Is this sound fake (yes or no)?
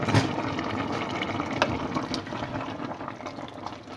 no